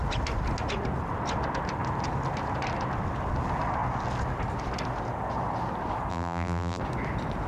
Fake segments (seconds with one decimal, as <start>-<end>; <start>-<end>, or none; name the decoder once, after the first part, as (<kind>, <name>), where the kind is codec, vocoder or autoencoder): 6.1-6.8 (vocoder, BigVGAN v2)